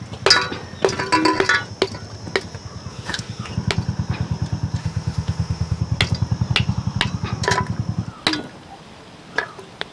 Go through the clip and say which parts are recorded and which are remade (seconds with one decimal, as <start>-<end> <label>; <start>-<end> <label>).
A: 0.0-2.9 recorded; 2.9-3.5 remade; 3.5-4.8 recorded; 4.8-5.8 remade; 5.8-9.9 recorded

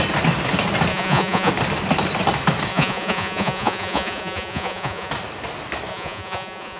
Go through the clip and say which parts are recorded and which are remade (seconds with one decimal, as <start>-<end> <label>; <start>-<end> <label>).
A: 0.0-0.9 recorded; 0.9-1.5 remade; 1.5-2.7 recorded; 2.7-5.1 remade; 5.1-5.9 recorded; 5.9-6.8 remade

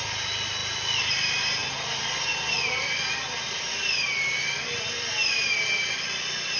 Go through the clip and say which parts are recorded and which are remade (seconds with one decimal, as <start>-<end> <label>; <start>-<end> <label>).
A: 0.0-6.6 recorded

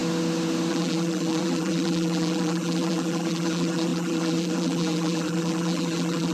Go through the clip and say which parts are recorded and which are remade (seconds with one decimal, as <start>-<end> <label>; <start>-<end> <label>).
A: 0.0-0.7 recorded; 0.7-6.3 remade

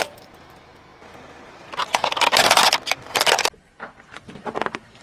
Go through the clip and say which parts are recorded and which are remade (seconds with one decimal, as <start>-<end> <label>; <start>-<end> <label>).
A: 0.0-5.0 recorded

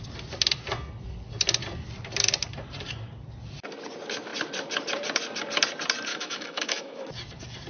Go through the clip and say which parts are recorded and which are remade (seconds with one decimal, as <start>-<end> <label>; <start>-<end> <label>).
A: 0.0-6.1 recorded; 6.1-7.0 remade; 7.0-7.7 recorded

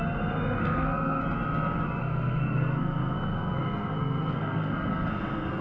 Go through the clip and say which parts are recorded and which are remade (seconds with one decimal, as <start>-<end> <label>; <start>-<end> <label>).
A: 0.0-0.6 recorded; 0.6-1.2 remade; 1.2-2.0 recorded; 2.0-5.6 remade